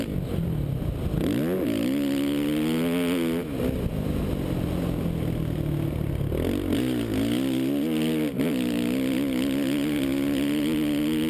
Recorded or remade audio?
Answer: recorded